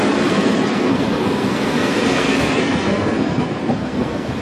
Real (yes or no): no